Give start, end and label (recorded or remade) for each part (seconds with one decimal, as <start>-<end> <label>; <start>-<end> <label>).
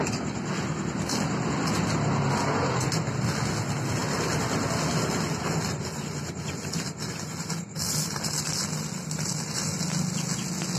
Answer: 0.0-10.8 recorded